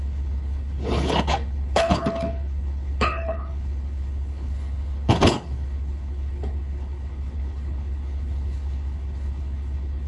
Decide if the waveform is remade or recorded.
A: remade